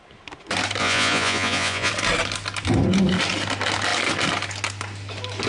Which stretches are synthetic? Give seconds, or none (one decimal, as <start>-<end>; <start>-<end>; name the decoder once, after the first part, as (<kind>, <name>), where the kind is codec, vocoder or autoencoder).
0.8-1.9 (vocoder, Vocos)